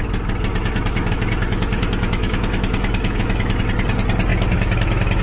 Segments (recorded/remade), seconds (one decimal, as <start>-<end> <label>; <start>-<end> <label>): 0.0-0.5 recorded; 0.5-3.6 remade; 3.6-4.3 recorded; 4.3-5.2 remade